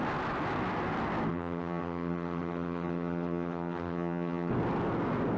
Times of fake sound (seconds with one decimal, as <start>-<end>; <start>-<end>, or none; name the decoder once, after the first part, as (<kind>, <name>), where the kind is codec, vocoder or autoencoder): 1.3-4.5 (vocoder, HiFi-GAN)